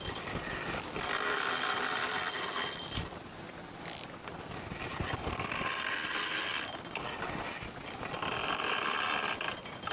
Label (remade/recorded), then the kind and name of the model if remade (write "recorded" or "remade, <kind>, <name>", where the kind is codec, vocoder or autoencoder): recorded